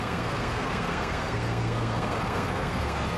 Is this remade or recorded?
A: remade